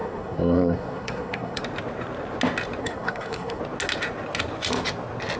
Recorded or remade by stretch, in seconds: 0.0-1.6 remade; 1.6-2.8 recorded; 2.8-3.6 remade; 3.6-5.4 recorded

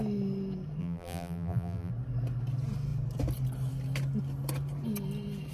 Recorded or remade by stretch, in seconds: 0.0-0.8 recorded; 0.8-1.9 remade; 1.9-5.5 recorded

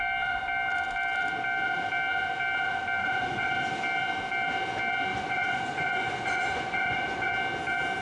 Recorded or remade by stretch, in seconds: 0.0-3.0 recorded; 3.0-3.5 remade; 3.5-5.1 recorded; 5.1-7.3 remade; 7.3-8.0 recorded

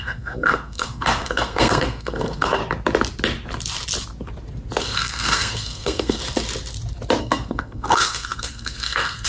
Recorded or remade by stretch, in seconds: 0.0-2.6 remade; 2.6-4.8 recorded; 4.8-6.2 remade; 6.2-7.2 recorded; 7.2-9.3 remade

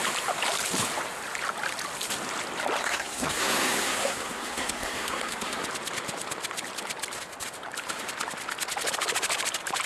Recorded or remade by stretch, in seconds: 0.0-2.8 recorded; 2.8-5.6 remade; 5.6-9.9 recorded

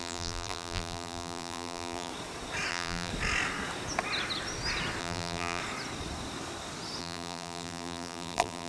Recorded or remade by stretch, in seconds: 0.0-2.1 remade; 2.1-2.7 recorded; 2.7-3.1 remade; 3.1-5.0 recorded; 5.0-5.6 remade; 5.6-7.0 recorded; 7.0-8.7 remade